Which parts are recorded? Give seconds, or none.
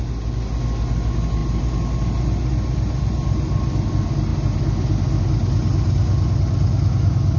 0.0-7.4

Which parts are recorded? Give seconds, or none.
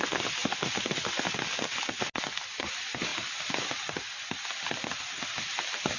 0.0-6.0